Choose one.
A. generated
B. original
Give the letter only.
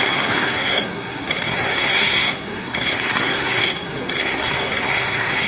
A